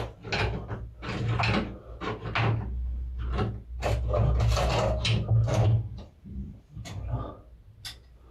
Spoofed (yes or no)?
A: no